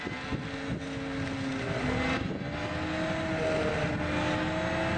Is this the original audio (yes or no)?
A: yes